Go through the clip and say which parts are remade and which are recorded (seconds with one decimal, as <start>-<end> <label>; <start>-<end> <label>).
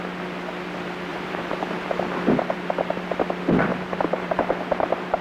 0.0-1.1 recorded; 1.1-1.9 remade; 1.9-3.7 recorded; 3.7-4.3 remade; 4.3-5.2 recorded